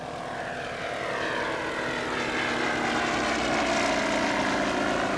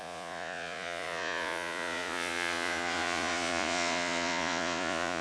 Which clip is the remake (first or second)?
second